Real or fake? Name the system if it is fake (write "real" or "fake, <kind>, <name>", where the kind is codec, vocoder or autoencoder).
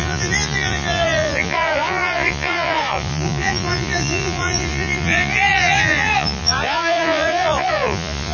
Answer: fake, vocoder, Vocos